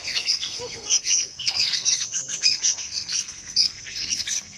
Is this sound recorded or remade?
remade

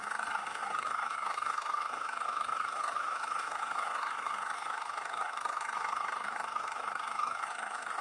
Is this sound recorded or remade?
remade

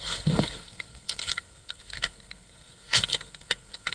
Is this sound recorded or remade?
remade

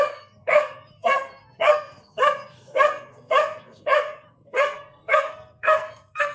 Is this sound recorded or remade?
remade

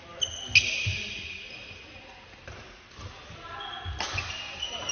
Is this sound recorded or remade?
recorded